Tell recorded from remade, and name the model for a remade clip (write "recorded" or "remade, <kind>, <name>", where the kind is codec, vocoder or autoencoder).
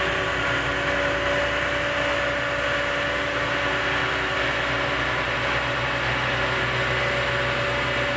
recorded